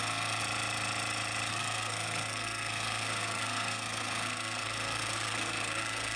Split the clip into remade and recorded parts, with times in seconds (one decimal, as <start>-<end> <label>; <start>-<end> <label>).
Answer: 0.0-0.4 remade; 0.4-1.5 recorded; 1.5-6.2 remade